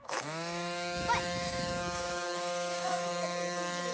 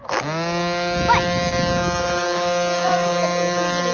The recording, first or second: second